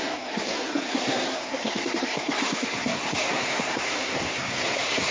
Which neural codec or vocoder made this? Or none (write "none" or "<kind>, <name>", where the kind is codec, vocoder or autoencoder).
codec, SNAC